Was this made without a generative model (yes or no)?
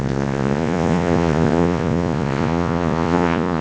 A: no